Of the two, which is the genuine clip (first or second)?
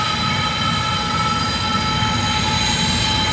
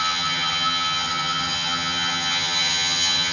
first